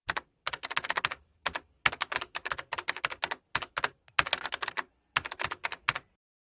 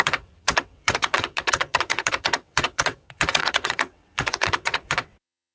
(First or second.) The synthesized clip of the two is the second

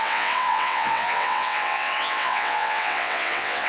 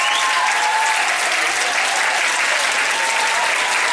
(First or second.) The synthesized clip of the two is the first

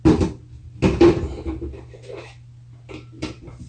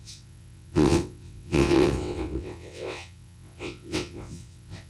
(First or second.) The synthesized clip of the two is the second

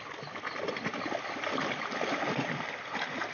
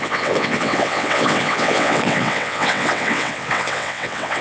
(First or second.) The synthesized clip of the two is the second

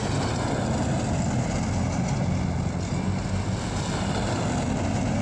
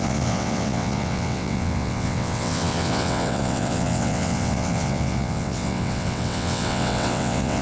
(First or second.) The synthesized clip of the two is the second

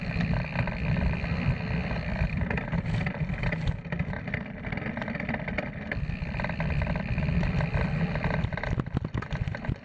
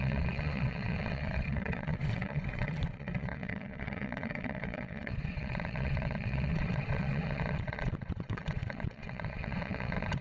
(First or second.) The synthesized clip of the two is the second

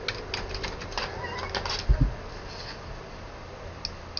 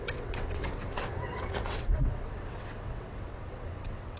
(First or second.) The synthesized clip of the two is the second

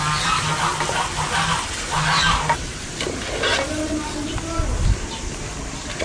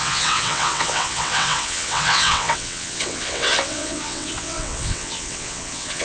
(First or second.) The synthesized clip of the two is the second